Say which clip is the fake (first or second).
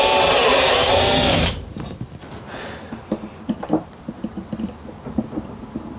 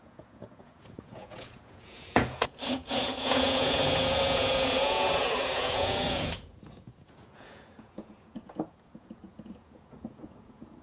second